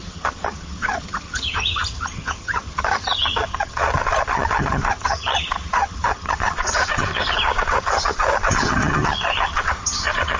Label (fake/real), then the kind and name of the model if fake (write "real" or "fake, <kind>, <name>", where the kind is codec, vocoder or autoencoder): fake, vocoder, HiFi-GAN